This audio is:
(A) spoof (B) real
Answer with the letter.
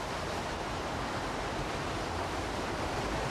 B